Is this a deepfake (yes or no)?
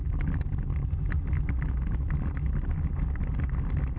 no